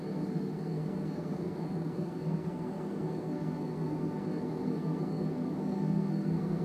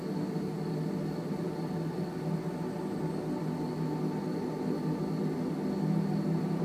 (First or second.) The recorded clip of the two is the second